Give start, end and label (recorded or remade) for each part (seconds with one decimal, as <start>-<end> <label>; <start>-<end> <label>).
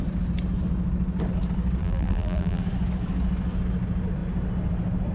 0.0-1.8 recorded; 1.8-2.6 remade; 2.6-5.1 recorded